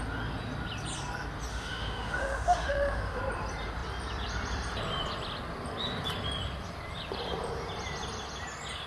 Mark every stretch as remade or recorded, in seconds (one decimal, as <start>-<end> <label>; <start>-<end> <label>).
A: 0.0-1.5 recorded; 1.5-3.2 remade; 3.2-8.9 recorded